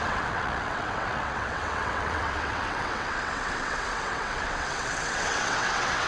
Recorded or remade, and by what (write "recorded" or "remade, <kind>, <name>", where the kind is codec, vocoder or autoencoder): remade, vocoder, WaveNeXt